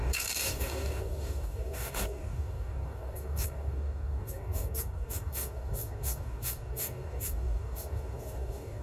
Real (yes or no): no